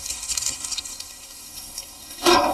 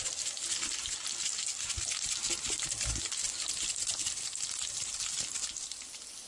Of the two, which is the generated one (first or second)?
first